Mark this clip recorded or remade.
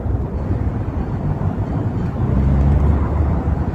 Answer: recorded